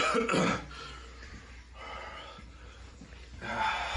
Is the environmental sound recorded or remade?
recorded